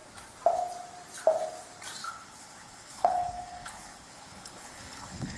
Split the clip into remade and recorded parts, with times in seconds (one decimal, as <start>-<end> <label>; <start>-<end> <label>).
0.0-2.0 recorded; 2.0-5.4 remade